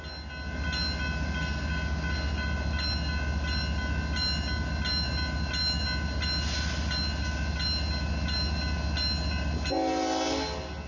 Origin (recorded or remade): recorded